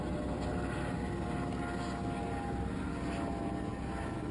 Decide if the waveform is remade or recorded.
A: recorded